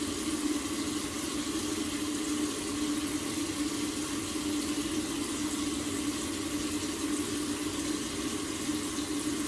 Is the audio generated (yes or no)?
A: no